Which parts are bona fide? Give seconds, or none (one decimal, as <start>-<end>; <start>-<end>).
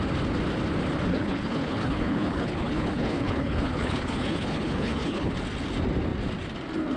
0.0-1.1; 5.3-7.0